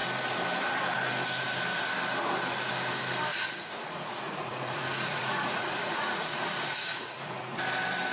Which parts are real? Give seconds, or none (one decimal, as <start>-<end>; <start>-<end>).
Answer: 0.0-3.3; 7.6-8.1